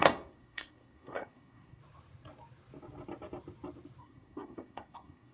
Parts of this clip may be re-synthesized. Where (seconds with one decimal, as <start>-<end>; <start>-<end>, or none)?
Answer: 0.0-1.8; 4.0-5.3